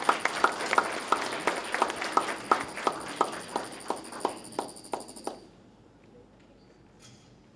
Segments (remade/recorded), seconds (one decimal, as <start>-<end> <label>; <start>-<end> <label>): 0.0-7.6 recorded